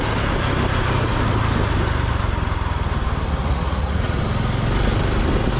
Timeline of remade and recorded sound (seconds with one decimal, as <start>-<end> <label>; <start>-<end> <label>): 0.0-3.4 recorded; 3.4-4.2 remade; 4.2-5.6 recorded